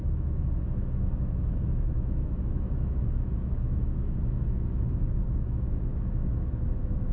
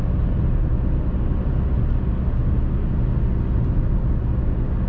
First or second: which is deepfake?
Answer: first